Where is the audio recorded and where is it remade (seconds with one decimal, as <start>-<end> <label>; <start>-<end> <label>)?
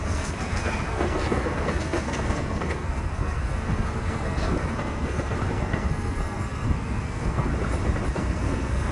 0.0-7.5 remade; 7.5-8.1 recorded; 8.1-8.9 remade